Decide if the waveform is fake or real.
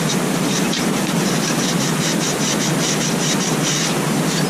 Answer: real